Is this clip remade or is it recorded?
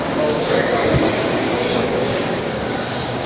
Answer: remade